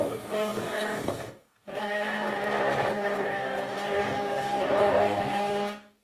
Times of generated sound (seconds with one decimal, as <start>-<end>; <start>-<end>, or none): 0.0-2.3; 2.9-6.0